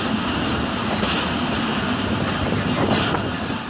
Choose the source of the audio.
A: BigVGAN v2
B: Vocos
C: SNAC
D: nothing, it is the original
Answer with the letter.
D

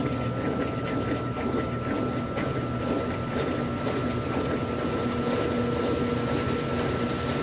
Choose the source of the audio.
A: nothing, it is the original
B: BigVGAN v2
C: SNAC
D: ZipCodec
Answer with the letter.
A